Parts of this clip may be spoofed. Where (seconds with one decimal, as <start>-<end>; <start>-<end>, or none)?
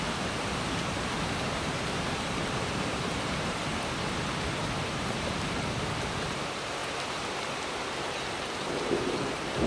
0.0-3.7; 4.2-6.8; 8.4-9.7